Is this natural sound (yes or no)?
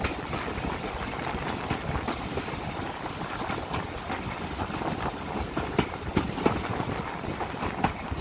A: yes